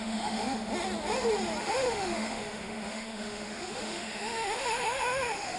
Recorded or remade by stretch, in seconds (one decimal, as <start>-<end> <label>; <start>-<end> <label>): 0.0-0.7 remade; 0.7-1.6 recorded; 1.6-5.6 remade